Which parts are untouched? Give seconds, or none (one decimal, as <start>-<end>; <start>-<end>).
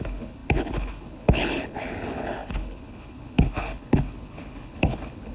none